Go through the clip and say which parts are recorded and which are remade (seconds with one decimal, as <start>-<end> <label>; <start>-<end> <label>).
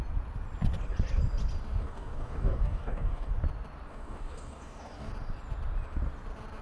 0.0-1.8 recorded; 1.8-3.3 remade; 3.3-3.9 recorded; 3.9-5.1 remade; 5.1-6.6 recorded